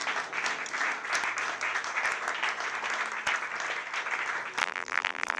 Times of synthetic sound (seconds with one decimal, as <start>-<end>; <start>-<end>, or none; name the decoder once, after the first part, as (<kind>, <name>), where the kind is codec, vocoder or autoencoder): 4.6-5.4 (vocoder, BigVGAN v2)

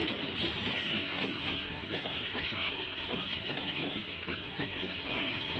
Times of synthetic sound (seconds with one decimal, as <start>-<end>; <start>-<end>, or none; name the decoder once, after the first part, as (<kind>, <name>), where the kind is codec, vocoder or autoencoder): 0.7-5.6 (codec, SNAC)

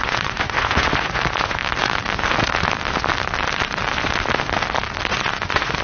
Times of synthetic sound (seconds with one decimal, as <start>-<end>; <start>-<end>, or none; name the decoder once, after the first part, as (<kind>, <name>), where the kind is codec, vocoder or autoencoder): 0.0-1.6 (vocoder, Vocos); 5.1-5.8

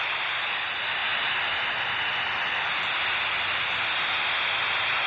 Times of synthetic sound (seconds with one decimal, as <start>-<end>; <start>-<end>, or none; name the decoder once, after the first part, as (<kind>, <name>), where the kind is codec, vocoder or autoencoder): none

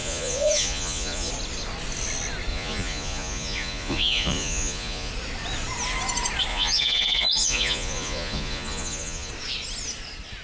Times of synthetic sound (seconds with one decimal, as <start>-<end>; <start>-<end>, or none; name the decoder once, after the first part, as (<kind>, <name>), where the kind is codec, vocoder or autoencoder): 0.0-1.3 (vocoder, Vocos); 2.5-5.1; 6.5-9.3